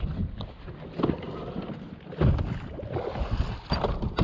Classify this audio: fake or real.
real